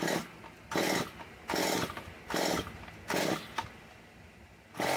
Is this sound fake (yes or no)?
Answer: no